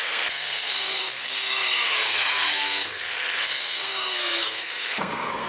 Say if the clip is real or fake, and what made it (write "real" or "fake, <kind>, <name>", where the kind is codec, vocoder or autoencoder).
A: fake, codec, SNAC